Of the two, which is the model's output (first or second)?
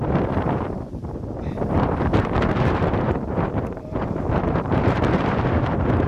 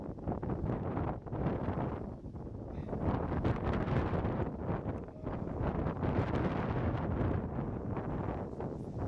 first